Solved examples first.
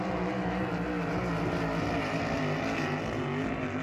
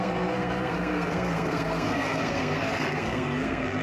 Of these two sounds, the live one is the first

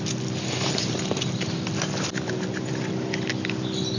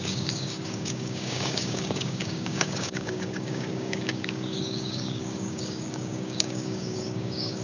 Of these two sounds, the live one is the first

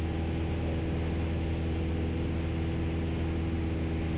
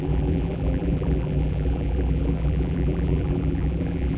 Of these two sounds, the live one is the first